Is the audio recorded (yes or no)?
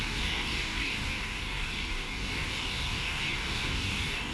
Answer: no